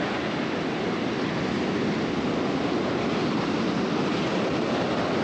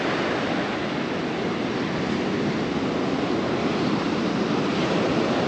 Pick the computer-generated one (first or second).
first